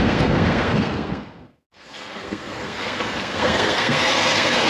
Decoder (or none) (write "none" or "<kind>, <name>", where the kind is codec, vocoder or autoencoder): codec, SNAC